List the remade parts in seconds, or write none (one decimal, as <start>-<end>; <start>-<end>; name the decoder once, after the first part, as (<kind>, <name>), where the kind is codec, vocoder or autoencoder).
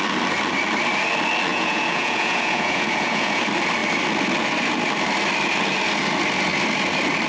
1.5-3.4 (vocoder, Vocos)